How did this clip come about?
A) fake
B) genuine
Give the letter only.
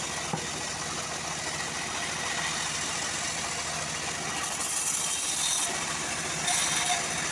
B